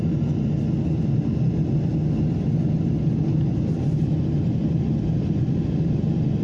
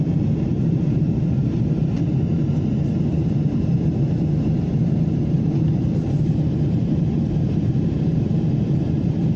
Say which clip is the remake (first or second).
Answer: second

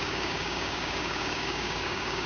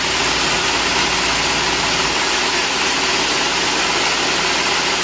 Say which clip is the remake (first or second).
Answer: first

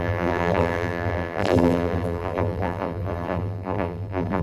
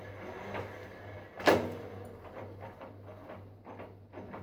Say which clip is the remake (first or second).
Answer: first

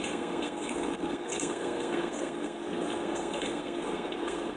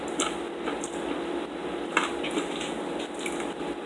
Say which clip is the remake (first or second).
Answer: first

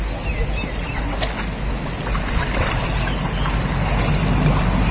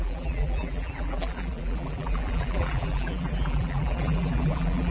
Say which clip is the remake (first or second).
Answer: second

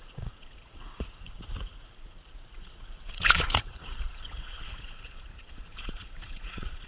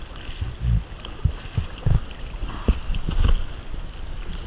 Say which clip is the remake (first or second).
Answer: first